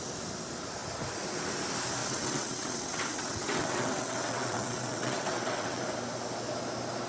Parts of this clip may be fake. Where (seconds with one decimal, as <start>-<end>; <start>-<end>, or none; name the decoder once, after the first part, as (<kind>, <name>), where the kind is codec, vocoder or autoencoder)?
2.0-5.8 (vocoder, WaveNeXt)